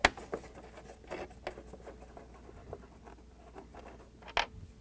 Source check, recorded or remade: recorded